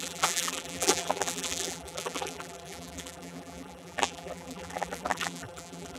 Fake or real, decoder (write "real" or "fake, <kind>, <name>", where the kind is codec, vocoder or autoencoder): fake, vocoder, BigVGAN v2